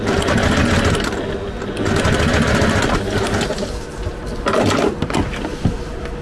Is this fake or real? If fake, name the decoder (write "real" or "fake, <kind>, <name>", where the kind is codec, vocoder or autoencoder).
real